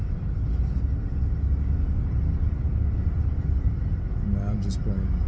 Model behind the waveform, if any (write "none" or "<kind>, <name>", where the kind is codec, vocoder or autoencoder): none